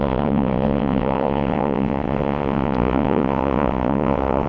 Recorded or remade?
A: remade